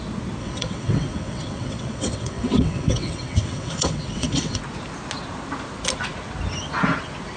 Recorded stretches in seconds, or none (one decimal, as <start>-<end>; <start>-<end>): 0.0-0.4; 4.6-7.4